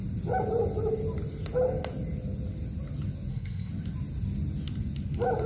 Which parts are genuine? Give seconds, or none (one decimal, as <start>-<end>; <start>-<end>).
0.0-3.3; 3.7-5.5